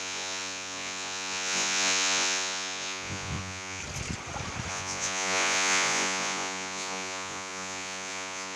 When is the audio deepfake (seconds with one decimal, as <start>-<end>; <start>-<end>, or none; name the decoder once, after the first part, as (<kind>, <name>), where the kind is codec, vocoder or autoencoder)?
0.0-3.8 (vocoder, Vocos); 4.7-8.6